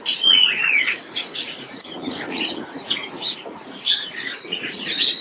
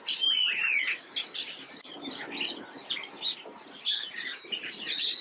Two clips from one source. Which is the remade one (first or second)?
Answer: first